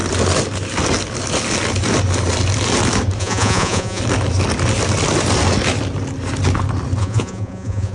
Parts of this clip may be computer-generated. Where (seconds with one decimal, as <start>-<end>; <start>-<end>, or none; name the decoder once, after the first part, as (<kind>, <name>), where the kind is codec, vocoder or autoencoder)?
3.2-4.0 (vocoder, Vocos); 7.0-7.9